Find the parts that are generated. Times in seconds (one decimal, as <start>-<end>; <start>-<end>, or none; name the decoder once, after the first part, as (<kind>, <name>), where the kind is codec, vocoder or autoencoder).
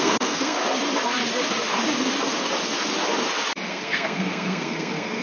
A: 0.0-0.6 (codec, SNAC); 3.7-5.2